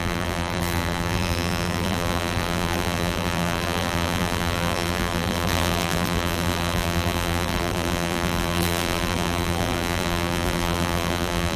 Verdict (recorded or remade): remade